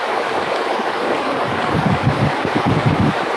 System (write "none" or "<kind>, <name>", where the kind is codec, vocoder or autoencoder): codec, DAC